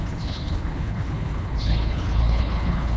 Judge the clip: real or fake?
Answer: fake